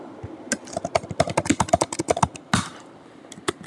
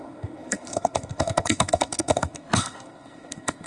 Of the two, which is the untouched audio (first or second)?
first